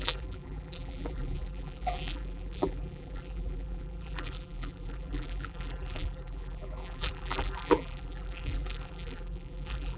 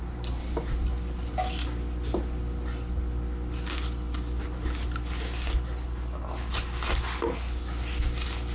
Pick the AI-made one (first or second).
first